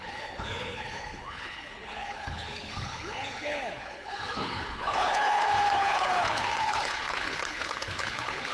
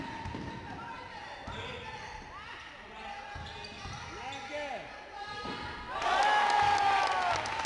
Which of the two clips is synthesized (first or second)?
first